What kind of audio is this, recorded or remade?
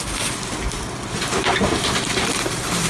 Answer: recorded